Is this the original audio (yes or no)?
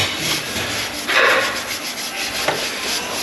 yes